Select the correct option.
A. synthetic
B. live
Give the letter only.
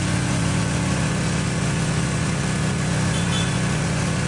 A